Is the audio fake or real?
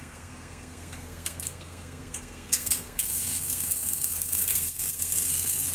fake